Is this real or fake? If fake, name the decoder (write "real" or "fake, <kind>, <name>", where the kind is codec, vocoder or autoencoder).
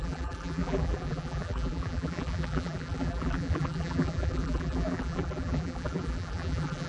fake, vocoder, BigVGAN v2